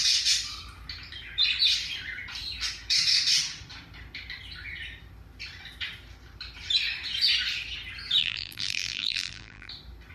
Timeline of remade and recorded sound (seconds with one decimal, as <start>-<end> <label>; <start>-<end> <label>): 0.0-8.2 recorded; 8.2-9.7 remade; 9.7-10.1 recorded